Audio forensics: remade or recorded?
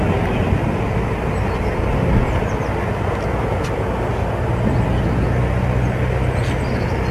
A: recorded